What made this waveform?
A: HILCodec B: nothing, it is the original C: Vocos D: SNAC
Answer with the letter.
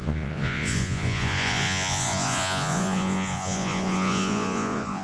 C